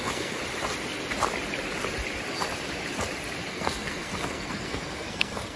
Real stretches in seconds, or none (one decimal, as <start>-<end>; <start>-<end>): 0.4-3.5